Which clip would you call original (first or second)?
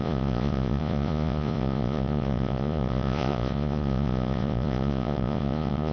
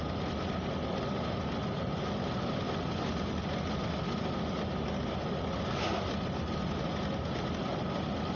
second